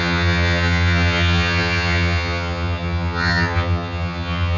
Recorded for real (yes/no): no